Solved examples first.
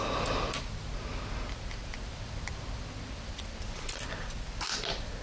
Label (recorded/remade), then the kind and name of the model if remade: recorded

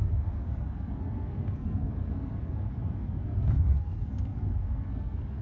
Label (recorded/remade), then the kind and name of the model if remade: remade, codec, SNAC